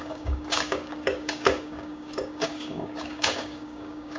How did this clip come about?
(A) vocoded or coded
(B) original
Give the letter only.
A